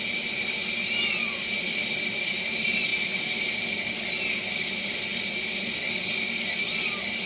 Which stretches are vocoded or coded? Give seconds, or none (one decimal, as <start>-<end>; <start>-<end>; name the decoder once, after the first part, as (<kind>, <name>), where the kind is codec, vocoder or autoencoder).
none